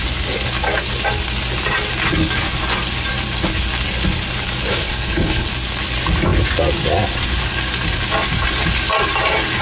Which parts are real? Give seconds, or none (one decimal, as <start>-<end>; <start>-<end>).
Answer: 0.0-4.7; 5.5-9.6